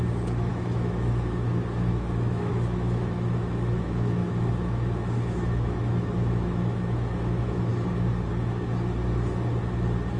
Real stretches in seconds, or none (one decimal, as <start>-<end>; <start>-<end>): 7.7-10.2